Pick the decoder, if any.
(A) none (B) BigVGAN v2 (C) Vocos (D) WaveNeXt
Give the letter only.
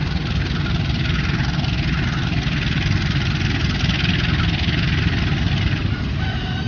A